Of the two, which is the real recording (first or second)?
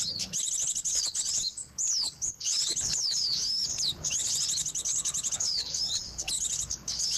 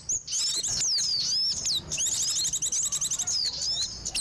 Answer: second